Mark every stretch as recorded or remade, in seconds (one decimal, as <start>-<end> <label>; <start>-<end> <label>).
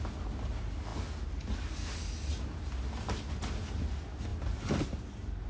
0.0-5.5 recorded